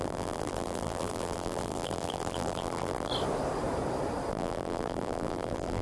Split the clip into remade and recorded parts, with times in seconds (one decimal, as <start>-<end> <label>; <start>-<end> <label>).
0.0-3.1 remade; 3.1-4.3 recorded; 4.3-5.8 remade